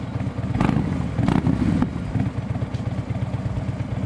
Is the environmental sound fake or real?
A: real